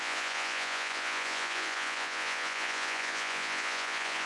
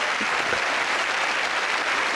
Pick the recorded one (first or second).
second